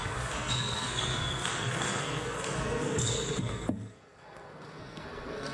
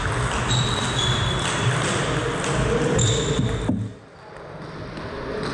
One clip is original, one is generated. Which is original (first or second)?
second